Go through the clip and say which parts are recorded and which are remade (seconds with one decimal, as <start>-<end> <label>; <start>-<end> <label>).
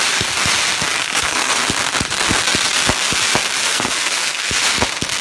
0.0-0.9 recorded; 0.9-1.6 remade; 1.6-3.6 recorded; 3.6-4.7 remade; 4.7-5.2 recorded